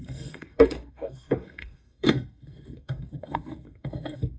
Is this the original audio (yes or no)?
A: no